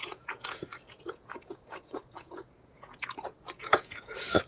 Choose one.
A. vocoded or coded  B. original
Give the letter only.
A